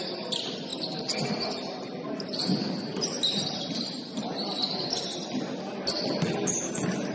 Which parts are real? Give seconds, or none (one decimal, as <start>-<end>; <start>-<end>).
0.0-7.1